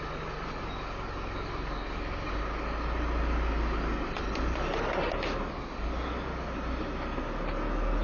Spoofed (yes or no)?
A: no